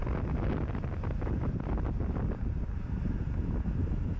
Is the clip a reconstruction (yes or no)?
no